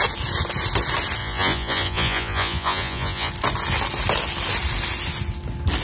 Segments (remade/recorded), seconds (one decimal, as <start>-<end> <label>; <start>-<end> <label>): 0.0-1.2 recorded; 1.2-3.3 remade; 3.3-5.8 recorded